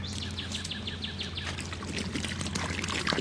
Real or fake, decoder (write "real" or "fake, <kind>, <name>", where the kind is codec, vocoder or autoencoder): real